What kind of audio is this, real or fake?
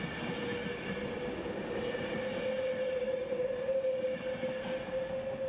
real